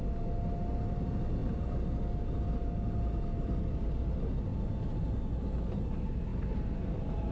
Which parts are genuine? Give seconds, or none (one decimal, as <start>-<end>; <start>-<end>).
0.0-7.3